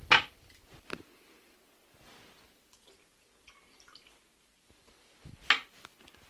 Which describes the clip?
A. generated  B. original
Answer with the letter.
B